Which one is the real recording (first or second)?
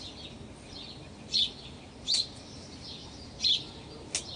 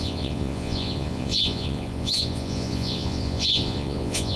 first